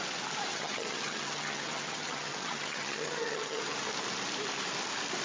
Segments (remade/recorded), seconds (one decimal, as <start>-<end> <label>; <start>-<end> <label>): 0.0-0.5 recorded; 0.5-3.6 remade; 3.6-5.2 recorded

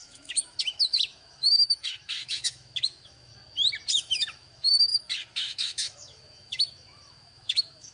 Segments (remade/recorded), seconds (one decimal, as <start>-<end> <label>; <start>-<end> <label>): 0.0-3.3 remade; 3.3-3.9 recorded; 3.9-7.9 remade

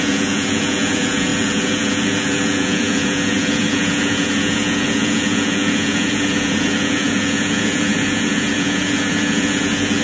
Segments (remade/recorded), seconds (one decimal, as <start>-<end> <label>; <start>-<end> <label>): 0.0-10.0 remade